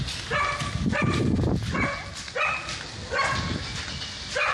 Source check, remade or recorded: recorded